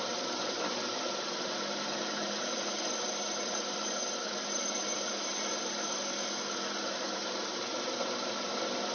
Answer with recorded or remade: remade